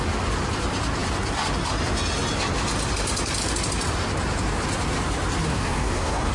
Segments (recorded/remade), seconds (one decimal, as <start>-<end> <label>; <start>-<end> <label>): 0.0-5.5 recorded; 5.5-6.3 remade